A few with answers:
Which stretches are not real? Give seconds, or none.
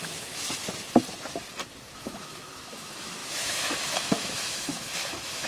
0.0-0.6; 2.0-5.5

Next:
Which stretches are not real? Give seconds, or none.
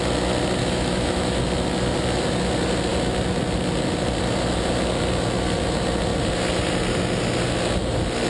0.6-1.4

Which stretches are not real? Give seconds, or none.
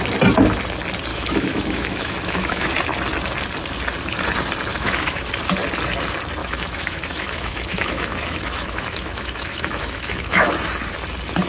1.1-2.7; 4.7-5.3; 6.4-10.5